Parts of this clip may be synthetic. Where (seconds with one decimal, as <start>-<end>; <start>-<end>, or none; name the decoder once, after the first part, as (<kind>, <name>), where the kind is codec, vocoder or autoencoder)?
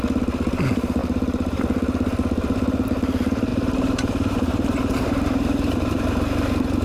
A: 1.0-1.6 (vocoder, BigVGAN v2); 3.5-6.0